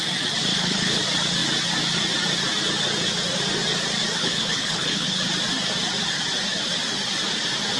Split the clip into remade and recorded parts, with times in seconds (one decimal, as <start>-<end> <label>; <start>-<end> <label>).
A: 0.0-0.5 recorded; 0.5-1.0 remade; 1.0-4.2 recorded; 4.2-5.2 remade; 5.2-7.8 recorded